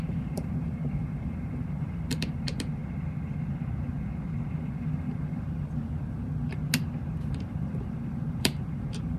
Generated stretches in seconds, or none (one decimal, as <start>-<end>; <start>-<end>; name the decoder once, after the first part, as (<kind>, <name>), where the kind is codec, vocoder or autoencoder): 0.0-2.8 (vocoder, BigVGAN v2); 4.6-6.6; 7.3-9.2

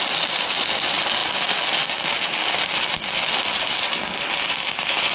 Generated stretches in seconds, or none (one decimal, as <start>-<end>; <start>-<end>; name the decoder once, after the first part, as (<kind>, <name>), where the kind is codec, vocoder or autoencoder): none